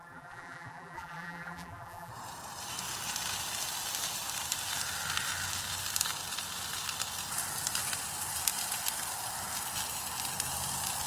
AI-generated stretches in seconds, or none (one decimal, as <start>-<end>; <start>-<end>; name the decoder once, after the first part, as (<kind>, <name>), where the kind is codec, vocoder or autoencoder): 0.0-2.1 (vocoder, BigVGAN v2)